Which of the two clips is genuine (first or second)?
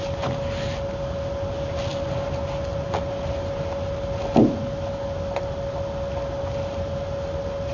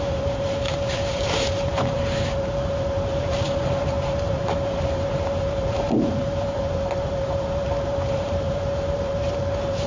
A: first